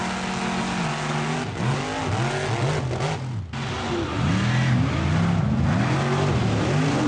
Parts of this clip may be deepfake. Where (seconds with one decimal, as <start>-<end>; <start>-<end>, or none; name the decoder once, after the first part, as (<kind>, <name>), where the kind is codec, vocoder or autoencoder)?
none